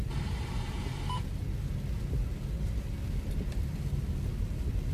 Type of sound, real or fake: real